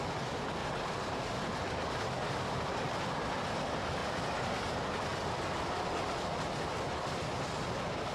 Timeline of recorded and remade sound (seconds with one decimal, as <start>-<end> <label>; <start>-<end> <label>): 0.0-0.6 recorded; 0.6-3.0 remade; 3.0-5.1 recorded; 5.1-6.3 remade; 6.3-8.1 recorded